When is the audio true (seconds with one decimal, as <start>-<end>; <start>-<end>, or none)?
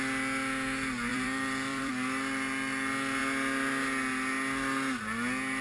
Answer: 0.0-1.1; 1.9-5.6